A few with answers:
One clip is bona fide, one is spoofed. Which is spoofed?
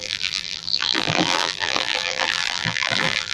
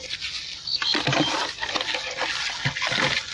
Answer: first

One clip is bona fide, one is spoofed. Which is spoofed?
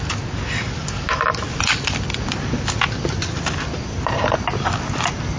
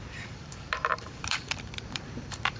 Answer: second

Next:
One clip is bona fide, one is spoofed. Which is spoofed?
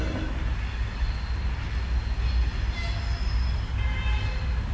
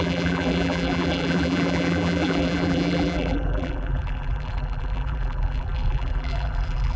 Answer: second